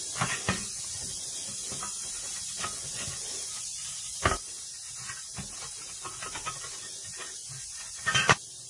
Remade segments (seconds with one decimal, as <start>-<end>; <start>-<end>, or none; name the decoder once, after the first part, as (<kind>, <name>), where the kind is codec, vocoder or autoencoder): 0.0-1.4 (vocoder, Vocos); 2.5-3.8; 6.3-8.7